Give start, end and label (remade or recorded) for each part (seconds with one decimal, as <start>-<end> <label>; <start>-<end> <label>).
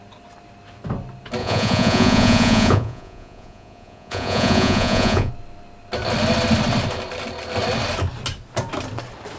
0.0-1.4 recorded; 1.4-5.3 remade; 5.3-9.4 recorded